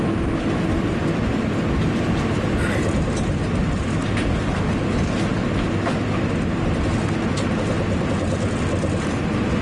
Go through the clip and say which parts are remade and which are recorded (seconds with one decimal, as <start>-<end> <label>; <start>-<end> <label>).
0.0-9.6 recorded